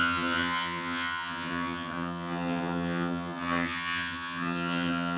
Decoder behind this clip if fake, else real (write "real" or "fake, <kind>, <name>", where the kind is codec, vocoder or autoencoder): fake, vocoder, HiFi-GAN